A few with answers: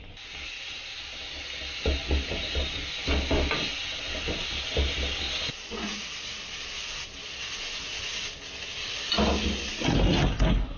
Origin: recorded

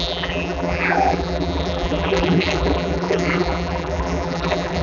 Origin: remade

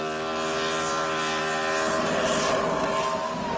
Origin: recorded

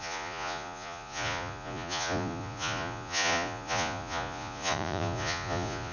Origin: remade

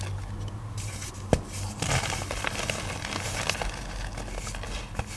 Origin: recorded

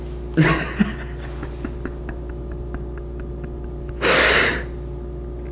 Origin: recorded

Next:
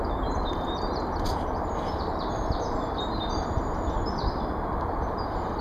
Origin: remade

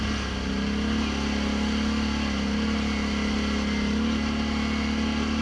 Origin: recorded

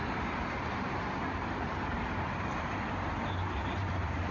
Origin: remade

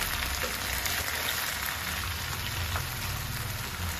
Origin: recorded